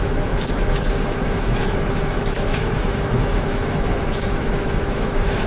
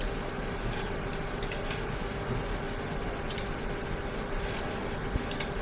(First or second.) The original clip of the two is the second